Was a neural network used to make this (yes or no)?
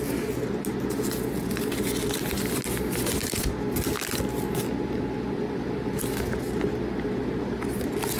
no